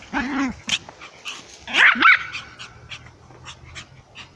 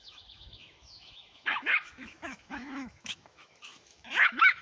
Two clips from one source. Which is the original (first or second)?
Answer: first